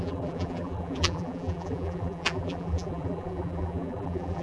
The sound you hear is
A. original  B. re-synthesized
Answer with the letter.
B